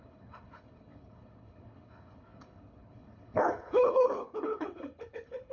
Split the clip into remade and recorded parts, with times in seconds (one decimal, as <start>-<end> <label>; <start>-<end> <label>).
0.0-5.5 remade